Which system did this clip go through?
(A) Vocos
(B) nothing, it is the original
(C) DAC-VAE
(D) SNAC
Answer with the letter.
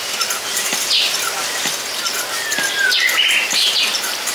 B